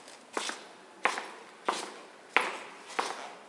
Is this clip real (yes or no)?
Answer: yes